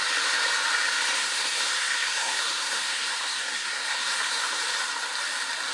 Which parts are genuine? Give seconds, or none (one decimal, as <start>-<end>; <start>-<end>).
0.0-1.2; 4.6-5.7